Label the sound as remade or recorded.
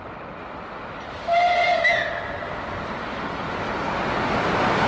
recorded